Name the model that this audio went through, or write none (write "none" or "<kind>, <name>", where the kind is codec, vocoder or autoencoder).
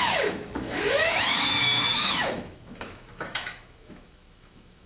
autoencoder, DAC-VAE